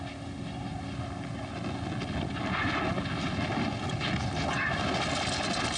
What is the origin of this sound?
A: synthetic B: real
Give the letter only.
B